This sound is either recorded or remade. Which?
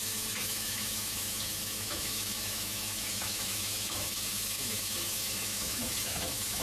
remade